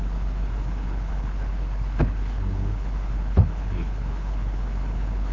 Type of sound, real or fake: fake